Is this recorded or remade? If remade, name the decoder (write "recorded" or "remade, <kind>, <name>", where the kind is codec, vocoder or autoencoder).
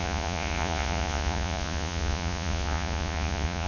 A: remade, vocoder, Vocos